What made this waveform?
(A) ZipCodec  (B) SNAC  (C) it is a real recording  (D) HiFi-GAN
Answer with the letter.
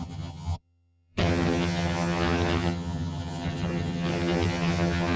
D